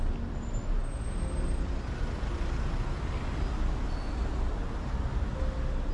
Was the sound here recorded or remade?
recorded